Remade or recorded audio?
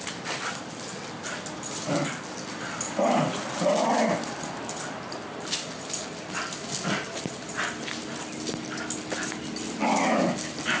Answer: recorded